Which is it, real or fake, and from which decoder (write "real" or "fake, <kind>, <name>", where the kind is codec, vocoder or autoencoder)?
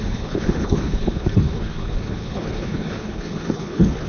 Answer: fake, codec, HILCodec